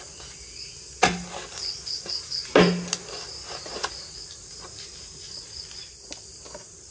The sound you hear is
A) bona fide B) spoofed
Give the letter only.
A